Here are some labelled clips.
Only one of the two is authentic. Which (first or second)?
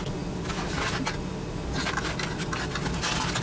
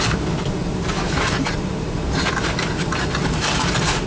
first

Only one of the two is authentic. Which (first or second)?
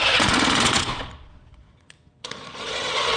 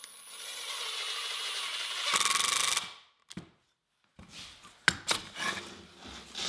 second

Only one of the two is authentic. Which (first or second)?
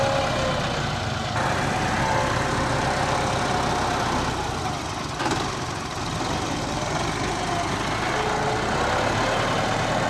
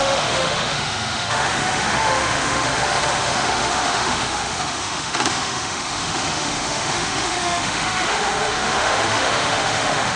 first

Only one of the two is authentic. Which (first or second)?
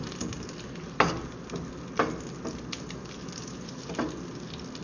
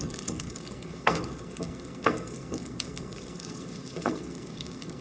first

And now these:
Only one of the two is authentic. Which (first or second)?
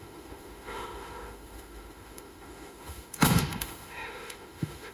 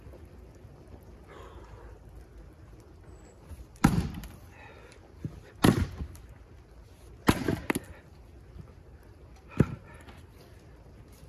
second